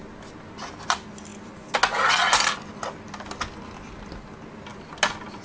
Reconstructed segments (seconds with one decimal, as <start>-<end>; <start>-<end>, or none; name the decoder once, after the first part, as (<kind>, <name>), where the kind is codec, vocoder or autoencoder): none